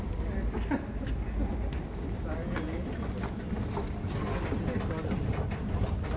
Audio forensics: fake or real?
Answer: real